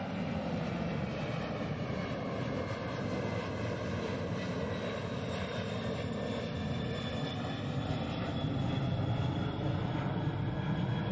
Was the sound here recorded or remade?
recorded